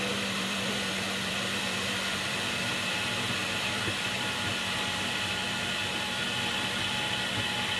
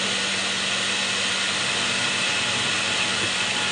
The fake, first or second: first